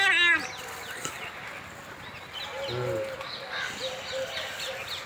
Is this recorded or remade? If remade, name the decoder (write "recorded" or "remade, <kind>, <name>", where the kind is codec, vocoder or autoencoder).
recorded